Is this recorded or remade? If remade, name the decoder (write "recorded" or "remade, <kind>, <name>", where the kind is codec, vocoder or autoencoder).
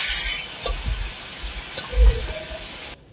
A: recorded